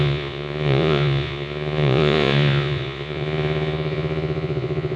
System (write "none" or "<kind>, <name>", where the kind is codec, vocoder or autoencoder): vocoder, Vocos